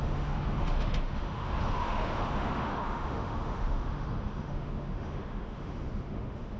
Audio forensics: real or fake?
fake